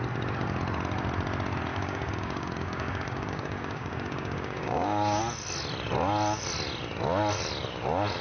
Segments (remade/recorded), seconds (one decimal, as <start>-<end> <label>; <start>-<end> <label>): 0.0-1.7 recorded; 1.7-5.2 remade; 5.2-8.2 recorded